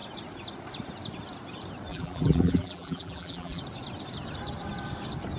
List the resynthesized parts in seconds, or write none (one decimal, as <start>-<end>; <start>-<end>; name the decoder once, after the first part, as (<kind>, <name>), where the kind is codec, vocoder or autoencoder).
1.9-3.6 (vocoder, BigVGAN v2)